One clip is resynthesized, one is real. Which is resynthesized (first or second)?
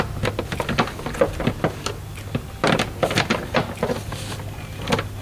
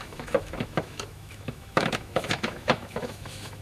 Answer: second